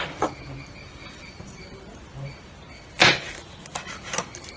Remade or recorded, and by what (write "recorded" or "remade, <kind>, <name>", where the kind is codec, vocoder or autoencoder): recorded